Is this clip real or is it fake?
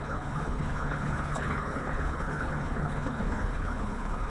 fake